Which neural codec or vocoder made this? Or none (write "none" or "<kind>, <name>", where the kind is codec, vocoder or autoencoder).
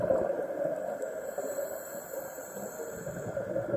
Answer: none